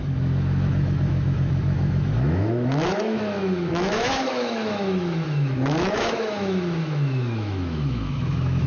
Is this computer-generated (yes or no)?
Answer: yes